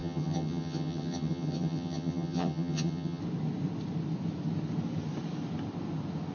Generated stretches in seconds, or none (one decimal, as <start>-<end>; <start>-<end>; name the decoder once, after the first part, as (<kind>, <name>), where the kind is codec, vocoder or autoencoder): 0.0-3.2 (vocoder, HiFi-GAN)